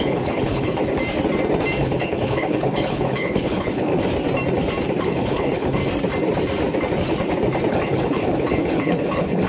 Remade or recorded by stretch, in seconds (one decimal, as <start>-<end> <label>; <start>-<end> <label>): 0.0-0.8 remade; 0.8-1.8 recorded; 1.8-3.9 remade; 3.9-5.0 recorded; 5.0-5.8 remade; 5.8-7.7 recorded; 7.7-9.5 remade

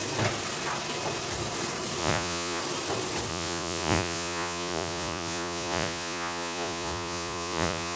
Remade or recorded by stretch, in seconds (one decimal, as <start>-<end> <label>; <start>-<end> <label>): 0.0-2.0 recorded; 2.0-2.6 remade; 2.6-3.3 recorded; 3.3-8.0 remade